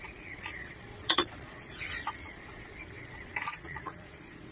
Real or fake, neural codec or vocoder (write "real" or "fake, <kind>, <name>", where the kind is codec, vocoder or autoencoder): fake, vocoder, Vocos